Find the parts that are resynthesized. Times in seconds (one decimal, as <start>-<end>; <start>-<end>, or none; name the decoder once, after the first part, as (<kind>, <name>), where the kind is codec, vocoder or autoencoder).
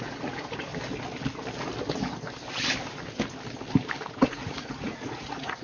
0.0-0.7 (vocoder, Vocos); 4.1-5.6